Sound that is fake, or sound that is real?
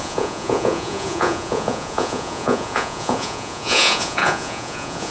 fake